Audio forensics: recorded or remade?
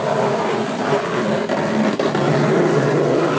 recorded